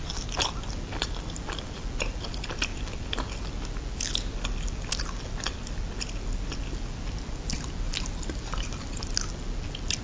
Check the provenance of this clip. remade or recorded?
recorded